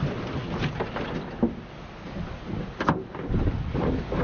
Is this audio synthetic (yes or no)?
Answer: no